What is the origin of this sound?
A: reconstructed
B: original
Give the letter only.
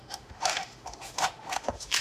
A